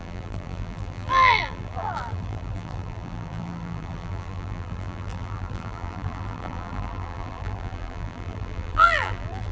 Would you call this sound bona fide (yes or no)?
no